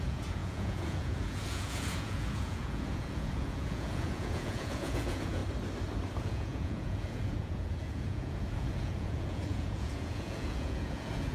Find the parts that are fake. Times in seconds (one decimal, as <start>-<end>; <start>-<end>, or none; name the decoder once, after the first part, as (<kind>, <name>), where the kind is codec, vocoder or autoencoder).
0.0-5.4 (vocoder, Vocos); 6.2-11.3